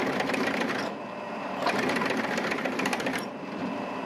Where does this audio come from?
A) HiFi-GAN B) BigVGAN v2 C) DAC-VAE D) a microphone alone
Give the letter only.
B